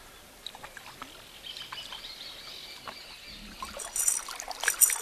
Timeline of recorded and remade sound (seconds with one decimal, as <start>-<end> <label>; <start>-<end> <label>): 0.0-5.0 recorded